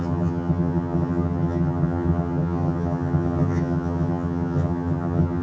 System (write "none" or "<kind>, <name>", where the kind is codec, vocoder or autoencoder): vocoder, HiFi-GAN